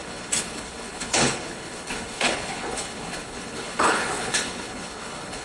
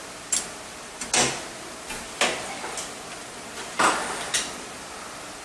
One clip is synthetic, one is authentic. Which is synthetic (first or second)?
first